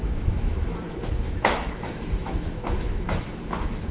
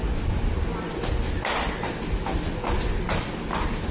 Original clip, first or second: second